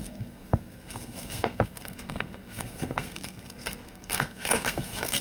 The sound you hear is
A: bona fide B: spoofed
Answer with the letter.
B